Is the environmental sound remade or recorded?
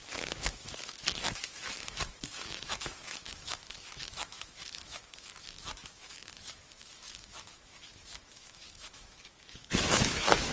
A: remade